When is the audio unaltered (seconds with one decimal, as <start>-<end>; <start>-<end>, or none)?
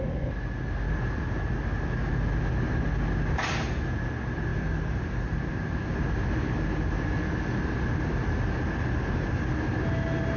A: 0.0-4.5; 5.5-10.4